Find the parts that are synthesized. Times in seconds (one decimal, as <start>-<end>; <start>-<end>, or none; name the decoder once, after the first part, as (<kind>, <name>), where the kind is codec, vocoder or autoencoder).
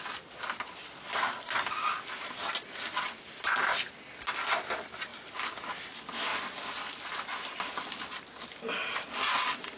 none